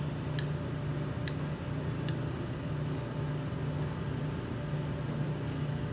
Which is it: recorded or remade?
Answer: recorded